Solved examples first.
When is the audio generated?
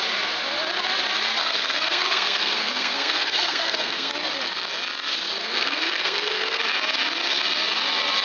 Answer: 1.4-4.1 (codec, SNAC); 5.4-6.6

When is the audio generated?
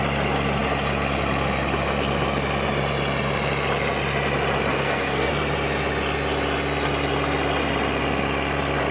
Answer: 4.7-5.3 (codec, SNAC)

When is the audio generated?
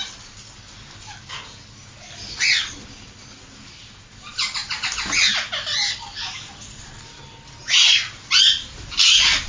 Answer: none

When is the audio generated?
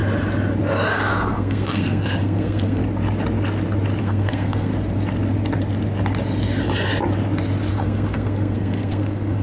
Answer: 1.1-2.8 (codec, SNAC); 4.0-4.7; 7.7-9.4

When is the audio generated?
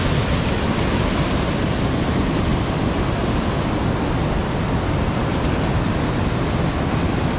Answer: none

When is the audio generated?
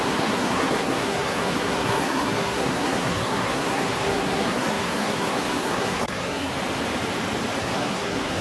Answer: 0.0-6.5 (codec, SNAC); 7.6-8.4